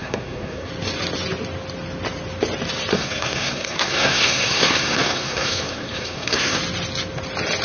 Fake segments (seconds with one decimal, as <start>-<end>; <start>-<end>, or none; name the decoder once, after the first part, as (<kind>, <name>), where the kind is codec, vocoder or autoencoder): 0.0-0.7 (codec, SNAC); 2.9-6.6